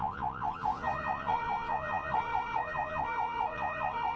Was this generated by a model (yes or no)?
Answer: yes